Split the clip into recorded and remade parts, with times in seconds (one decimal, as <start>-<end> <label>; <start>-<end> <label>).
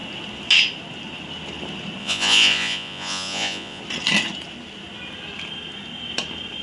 0.0-2.0 recorded; 2.0-3.8 remade; 3.8-6.6 recorded